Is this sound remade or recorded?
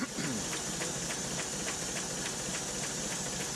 recorded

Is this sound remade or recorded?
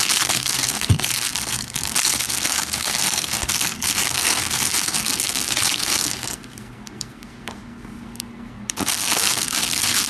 remade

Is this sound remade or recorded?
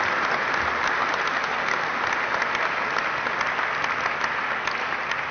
recorded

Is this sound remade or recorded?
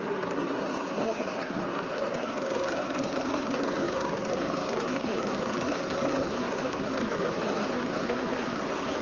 remade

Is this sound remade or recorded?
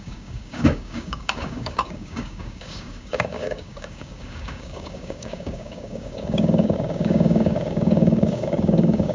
remade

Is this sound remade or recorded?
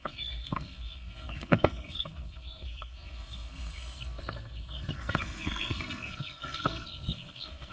remade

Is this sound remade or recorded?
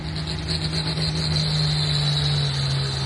recorded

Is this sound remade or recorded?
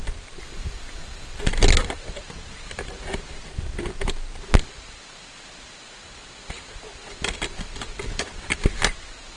recorded